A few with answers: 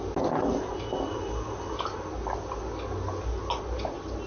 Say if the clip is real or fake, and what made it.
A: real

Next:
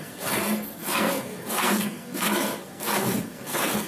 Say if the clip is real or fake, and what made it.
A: fake, codec, SNAC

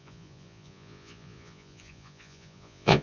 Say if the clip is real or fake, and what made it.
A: fake, vocoder, Vocos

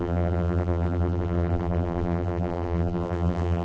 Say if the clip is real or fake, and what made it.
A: fake, vocoder, BigVGAN v2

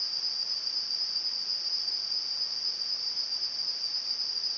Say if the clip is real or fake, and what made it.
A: real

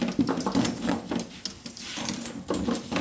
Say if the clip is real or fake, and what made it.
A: real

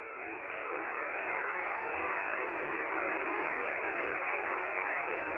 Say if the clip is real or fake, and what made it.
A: fake, codec, DAC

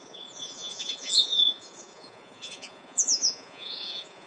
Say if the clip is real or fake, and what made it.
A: fake, vocoder, Vocos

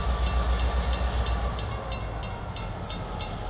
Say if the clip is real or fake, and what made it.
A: real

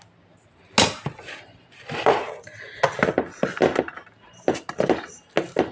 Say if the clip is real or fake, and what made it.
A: real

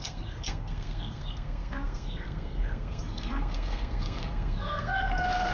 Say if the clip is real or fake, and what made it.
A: fake, codec, SNAC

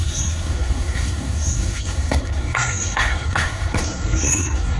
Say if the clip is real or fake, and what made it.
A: fake, codec, SNAC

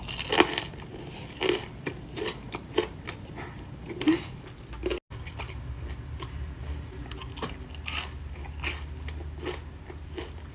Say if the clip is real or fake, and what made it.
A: real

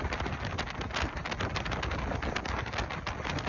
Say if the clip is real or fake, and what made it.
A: real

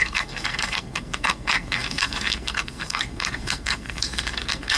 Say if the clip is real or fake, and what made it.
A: fake, codec, SNAC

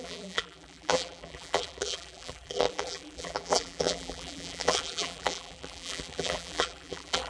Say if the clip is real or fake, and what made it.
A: fake, vocoder, BigVGAN v2